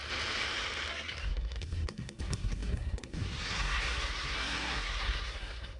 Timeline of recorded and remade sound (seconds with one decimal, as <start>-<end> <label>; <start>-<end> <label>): 0.0-0.9 recorded; 0.9-5.8 remade